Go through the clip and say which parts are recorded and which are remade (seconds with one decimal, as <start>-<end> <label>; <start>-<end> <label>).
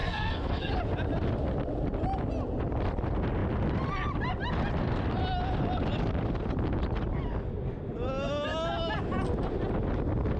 0.0-0.7 remade; 0.7-10.4 recorded